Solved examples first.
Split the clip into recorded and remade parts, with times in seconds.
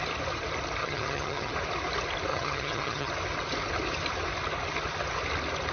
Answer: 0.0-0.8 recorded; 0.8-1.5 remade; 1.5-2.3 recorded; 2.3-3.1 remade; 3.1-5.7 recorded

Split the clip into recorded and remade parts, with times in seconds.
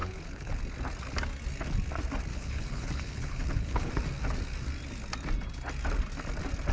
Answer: 0.0-0.6 remade; 0.6-2.3 recorded; 2.3-3.9 remade; 3.9-6.7 recorded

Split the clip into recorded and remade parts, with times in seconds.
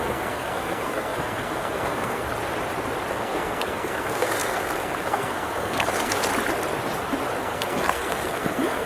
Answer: 0.0-2.3 remade; 2.3-3.1 recorded; 3.1-6.3 remade; 6.3-7.4 recorded; 7.4-8.9 remade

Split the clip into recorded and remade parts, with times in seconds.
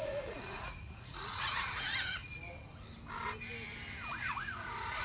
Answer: 0.0-2.2 remade; 2.2-4.2 recorded; 4.2-5.0 remade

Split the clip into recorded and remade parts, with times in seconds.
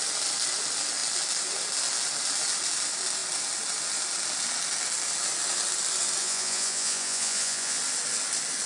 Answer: 0.0-6.2 recorded; 6.2-7.8 remade; 7.8-8.7 recorded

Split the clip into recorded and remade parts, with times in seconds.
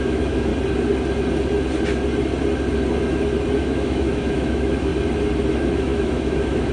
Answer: 0.0-0.5 remade; 0.5-3.6 recorded; 3.6-4.9 remade; 4.9-5.5 recorded; 5.5-6.7 remade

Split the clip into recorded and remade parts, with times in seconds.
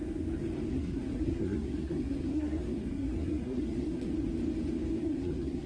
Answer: 0.0-0.7 recorded; 0.7-4.1 remade; 4.1-5.0 recorded; 5.0-5.7 remade